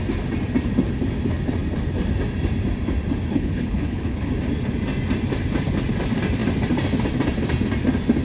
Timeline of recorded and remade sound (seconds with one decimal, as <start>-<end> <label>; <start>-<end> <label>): 0.0-3.3 recorded; 3.3-4.3 remade; 4.3-8.2 recorded